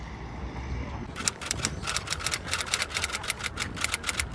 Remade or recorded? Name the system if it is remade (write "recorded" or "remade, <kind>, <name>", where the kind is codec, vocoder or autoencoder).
recorded